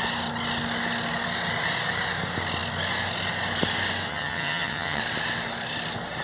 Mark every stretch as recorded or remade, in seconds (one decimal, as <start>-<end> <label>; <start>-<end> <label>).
0.0-4.1 recorded; 4.1-5.0 remade; 5.0-6.2 recorded

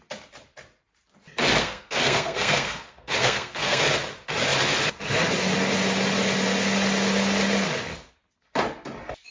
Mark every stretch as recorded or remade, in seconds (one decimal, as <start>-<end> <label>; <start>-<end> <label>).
0.0-1.6 recorded; 1.6-3.8 remade; 3.8-9.3 recorded

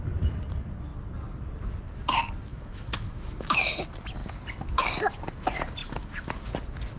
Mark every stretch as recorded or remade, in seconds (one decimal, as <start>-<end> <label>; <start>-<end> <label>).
0.0-2.5 recorded; 2.5-3.8 remade; 3.8-5.8 recorded; 5.8-6.3 remade; 6.3-7.0 recorded

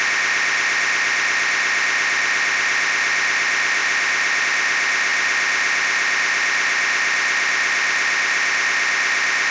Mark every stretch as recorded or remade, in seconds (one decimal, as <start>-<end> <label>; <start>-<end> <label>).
0.0-9.5 recorded

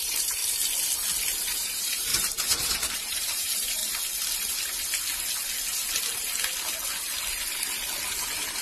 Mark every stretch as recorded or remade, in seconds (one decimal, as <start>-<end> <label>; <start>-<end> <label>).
0.0-0.4 remade; 0.4-1.4 recorded; 1.4-2.1 remade; 2.1-2.9 recorded; 2.9-3.8 remade; 3.8-8.6 recorded

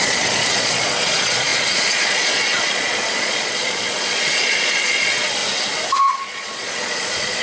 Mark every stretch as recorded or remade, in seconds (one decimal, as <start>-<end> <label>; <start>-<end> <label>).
0.0-5.4 remade; 5.4-6.2 recorded; 6.2-7.4 remade

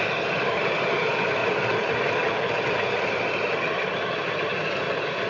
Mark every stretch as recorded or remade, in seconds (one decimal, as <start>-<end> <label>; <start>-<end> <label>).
0.0-1.4 recorded; 1.4-4.6 remade; 4.6-5.3 recorded

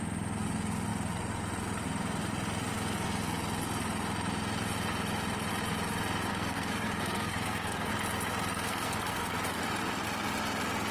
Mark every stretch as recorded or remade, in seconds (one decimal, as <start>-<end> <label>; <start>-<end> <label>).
0.0-6.3 recorded; 6.3-7.9 remade; 7.9-8.5 recorded; 8.5-9.7 remade; 9.7-10.9 recorded